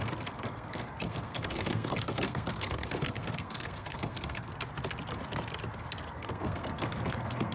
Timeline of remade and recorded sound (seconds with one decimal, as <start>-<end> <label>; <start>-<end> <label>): 0.0-4.5 remade; 4.5-6.1 recorded; 6.1-7.5 remade